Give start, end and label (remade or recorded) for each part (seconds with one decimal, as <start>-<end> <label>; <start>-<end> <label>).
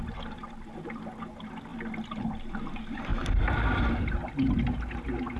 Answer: 0.0-5.4 recorded